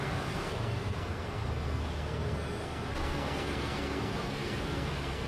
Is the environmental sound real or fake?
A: fake